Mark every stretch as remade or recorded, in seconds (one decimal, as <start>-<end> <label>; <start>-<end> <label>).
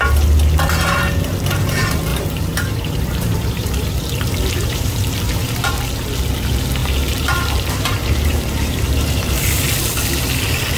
0.0-2.1 recorded; 2.1-5.7 remade; 5.7-6.8 recorded; 6.8-9.3 remade; 9.3-10.8 recorded